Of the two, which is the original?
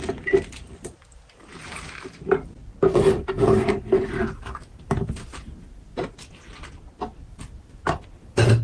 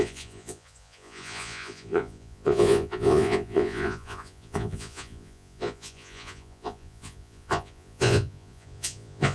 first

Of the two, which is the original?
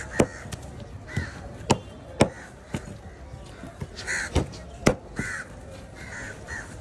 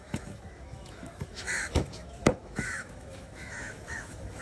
first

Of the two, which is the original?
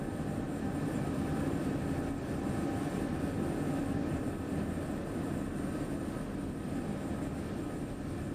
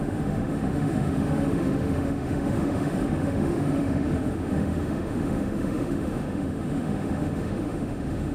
first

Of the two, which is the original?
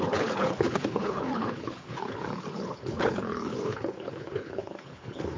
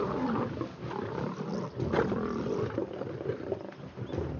second